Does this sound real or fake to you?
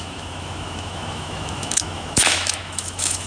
fake